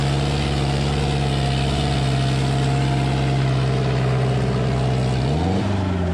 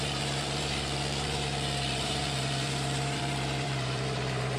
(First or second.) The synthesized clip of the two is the second